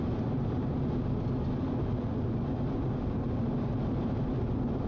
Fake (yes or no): no